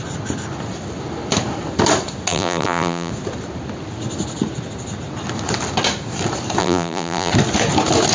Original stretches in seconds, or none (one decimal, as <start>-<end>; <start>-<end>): 0.0-2.3; 3.1-6.6; 7.3-8.1